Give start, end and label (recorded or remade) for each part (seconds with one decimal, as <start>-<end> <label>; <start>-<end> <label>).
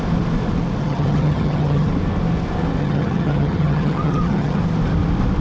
0.0-0.8 recorded; 0.8-1.9 remade; 1.9-2.8 recorded; 2.8-4.6 remade; 4.6-5.4 recorded